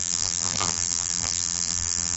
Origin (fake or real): fake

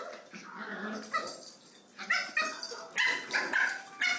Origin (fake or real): real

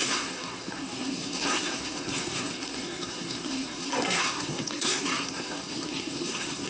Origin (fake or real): fake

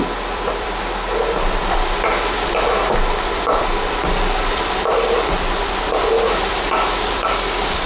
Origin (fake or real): fake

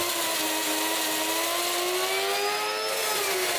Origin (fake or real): real